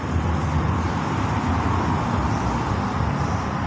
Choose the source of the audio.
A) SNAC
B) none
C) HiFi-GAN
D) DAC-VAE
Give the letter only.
B